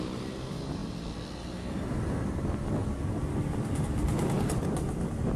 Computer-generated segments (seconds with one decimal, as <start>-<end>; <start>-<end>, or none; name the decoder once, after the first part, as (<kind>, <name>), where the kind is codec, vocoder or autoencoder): none